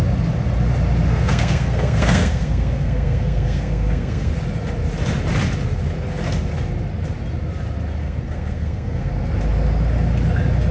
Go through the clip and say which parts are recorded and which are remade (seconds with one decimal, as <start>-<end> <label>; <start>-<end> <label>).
0.0-1.1 recorded; 1.1-4.3 remade; 4.3-8.0 recorded; 8.0-9.1 remade; 9.1-10.7 recorded